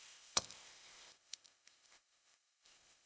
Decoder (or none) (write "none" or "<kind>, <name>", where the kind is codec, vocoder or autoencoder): codec, ZipCodec